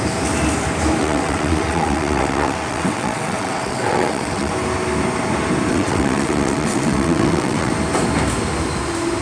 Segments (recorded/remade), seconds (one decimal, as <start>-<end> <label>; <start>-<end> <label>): 0.0-1.0 recorded; 1.0-4.5 remade; 4.5-5.7 recorded; 5.7-7.7 remade; 7.7-9.2 recorded

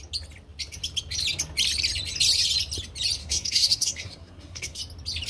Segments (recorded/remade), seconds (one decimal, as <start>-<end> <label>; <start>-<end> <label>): 0.0-3.2 recorded; 3.2-4.8 remade; 4.8-5.3 recorded

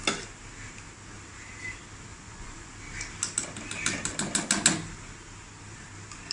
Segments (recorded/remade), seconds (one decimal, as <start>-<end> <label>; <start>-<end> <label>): 0.0-2.1 recorded; 2.1-2.8 remade; 2.8-6.3 recorded

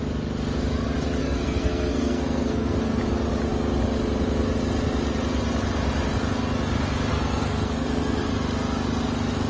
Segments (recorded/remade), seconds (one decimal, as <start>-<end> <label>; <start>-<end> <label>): 0.0-1.2 recorded; 1.2-3.0 remade; 3.0-7.1 recorded; 7.1-8.3 remade; 8.3-9.5 recorded

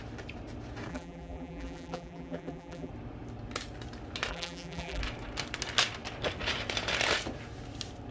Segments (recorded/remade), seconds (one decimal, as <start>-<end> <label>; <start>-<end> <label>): 0.0-0.9 recorded; 0.9-2.9 remade; 2.9-4.3 recorded; 4.3-5.0 remade; 5.0-8.1 recorded

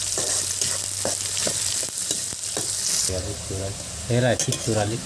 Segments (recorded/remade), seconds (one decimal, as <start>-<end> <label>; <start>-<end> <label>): 0.0-5.1 recorded